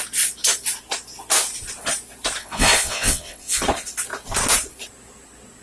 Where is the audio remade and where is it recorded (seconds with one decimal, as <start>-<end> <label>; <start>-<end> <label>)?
0.0-2.4 recorded; 2.4-3.6 remade; 3.6-5.6 recorded